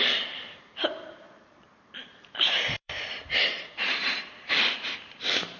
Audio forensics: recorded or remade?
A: remade